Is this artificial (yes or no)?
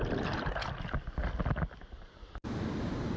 no